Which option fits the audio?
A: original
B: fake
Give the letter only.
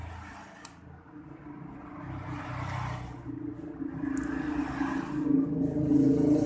A